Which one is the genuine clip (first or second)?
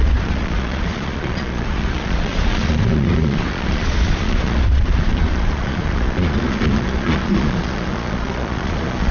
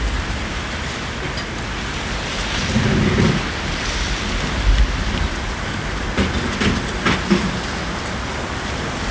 second